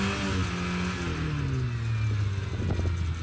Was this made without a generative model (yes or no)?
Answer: yes